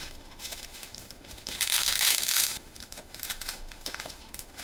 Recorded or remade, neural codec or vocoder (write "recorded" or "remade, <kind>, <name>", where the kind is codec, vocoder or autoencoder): remade, autoencoder, DAC-VAE